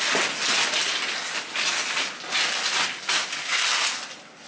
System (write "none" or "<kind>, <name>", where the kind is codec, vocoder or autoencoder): none